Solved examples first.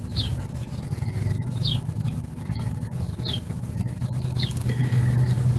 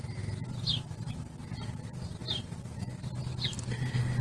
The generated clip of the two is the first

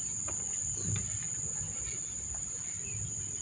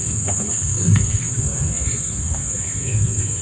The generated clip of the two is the second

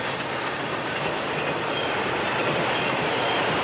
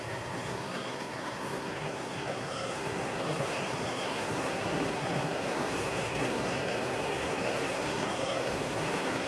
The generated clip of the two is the second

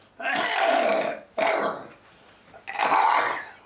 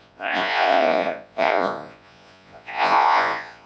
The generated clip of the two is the second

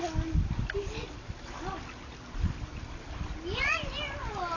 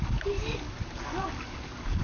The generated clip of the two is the second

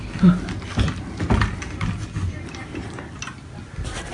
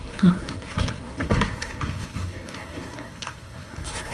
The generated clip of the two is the second